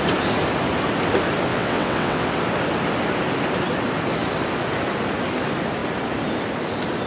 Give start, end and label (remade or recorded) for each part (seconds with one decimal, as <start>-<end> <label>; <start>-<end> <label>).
0.0-1.5 recorded; 1.5-2.3 remade; 2.3-7.1 recorded